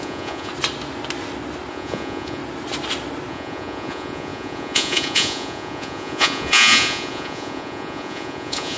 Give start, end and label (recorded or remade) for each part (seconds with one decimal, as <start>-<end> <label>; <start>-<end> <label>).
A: 0.0-0.5 remade; 0.5-1.7 recorded; 1.7-2.4 remade; 2.4-3.3 recorded; 3.3-8.8 remade